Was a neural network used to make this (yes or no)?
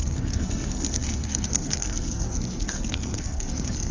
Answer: yes